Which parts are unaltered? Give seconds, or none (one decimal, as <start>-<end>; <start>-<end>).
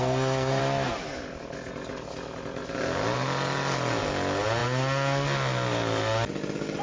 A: 0.6-6.8